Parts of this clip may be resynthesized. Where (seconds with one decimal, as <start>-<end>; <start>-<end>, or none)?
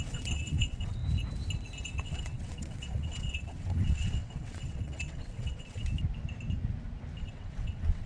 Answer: 0.0-1.0; 1.8-5.9; 7.2-8.1